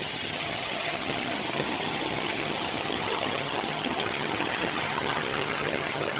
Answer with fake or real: fake